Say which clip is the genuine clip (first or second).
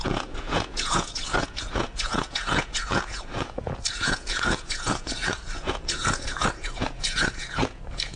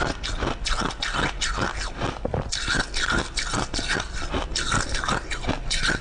second